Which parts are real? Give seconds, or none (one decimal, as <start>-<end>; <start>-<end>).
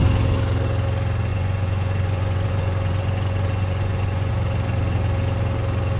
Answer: 0.0-1.3; 4.3-6.0